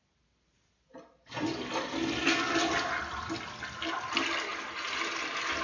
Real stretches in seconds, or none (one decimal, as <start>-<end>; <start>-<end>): 0.0-5.6